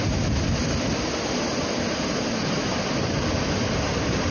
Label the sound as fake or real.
real